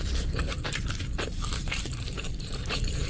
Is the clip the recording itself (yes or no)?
no